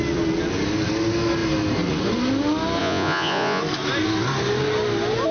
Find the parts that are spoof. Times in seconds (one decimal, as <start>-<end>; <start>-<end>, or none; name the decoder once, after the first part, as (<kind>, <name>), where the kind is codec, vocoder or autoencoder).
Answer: 2.8-3.6 (vocoder, Vocos)